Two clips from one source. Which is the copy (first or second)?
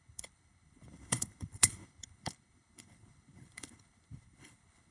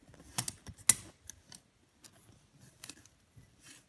first